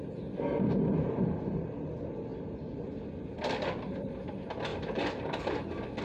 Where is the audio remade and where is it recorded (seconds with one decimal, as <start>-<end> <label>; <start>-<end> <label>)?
0.0-2.3 recorded; 2.3-4.1 remade; 4.1-4.7 recorded; 4.7-5.6 remade; 5.6-6.0 recorded